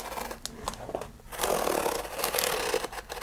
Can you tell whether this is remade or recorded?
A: recorded